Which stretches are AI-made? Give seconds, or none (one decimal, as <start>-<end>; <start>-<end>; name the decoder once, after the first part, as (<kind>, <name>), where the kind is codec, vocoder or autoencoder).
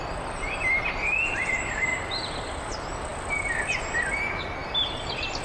none